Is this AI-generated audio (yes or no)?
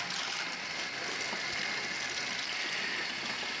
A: no